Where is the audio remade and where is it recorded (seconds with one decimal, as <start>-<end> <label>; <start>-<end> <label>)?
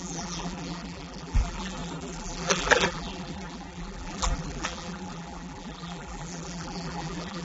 0.0-7.4 remade